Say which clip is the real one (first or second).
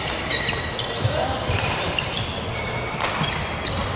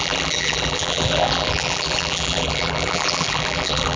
first